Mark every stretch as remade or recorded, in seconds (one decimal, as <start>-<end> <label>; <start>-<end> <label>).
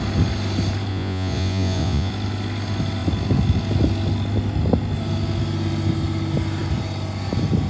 0.0-0.9 recorded; 0.9-2.1 remade; 2.1-7.7 recorded